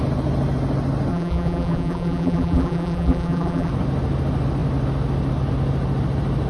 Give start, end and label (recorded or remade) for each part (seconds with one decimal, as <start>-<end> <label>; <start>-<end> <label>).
0.0-1.1 recorded; 1.1-3.7 remade; 3.7-6.5 recorded